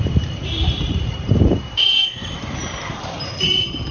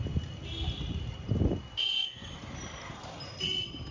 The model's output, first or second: first